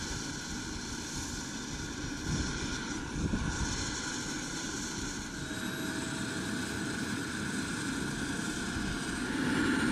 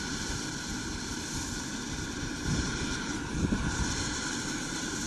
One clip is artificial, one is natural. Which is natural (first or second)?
first